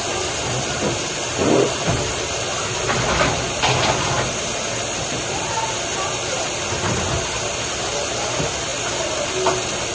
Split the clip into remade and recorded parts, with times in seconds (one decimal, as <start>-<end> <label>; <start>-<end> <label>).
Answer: 0.0-9.9 recorded